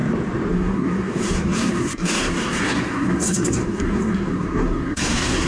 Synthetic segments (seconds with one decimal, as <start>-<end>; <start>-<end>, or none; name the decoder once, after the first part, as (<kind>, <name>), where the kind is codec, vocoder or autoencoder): 0.5-5.5 (codec, SNAC)